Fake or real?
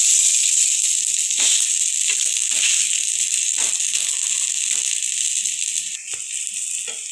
real